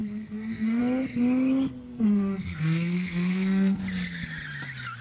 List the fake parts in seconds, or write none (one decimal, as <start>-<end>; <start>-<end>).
0.0-0.8; 1.9-3.8